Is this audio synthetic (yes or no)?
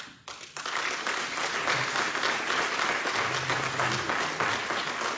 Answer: no